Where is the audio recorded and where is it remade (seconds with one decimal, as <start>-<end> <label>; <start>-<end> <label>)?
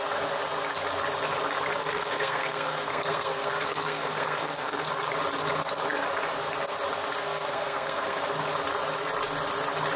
0.0-1.8 recorded; 1.8-4.9 remade; 4.9-7.2 recorded; 7.2-8.2 remade; 8.2-10.0 recorded